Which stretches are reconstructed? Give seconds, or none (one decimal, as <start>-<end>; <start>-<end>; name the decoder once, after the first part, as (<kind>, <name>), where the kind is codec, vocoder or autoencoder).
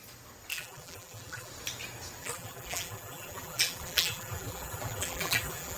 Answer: 0.5-1.5 (vocoder, BigVGAN v2); 2.2-5.8